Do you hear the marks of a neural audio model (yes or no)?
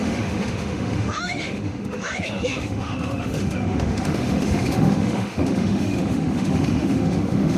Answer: yes